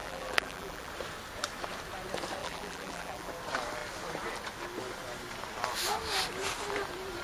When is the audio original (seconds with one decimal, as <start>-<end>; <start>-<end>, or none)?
0.9-2.4; 3.3-7.2